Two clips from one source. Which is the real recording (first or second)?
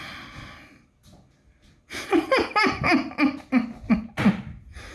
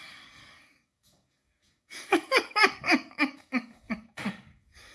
first